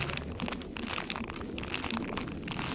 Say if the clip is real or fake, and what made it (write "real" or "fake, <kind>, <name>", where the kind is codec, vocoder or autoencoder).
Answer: real